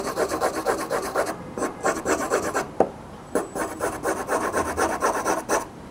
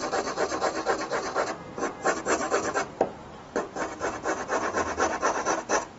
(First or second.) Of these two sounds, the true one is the second